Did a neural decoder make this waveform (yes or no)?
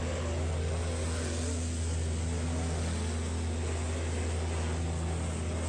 no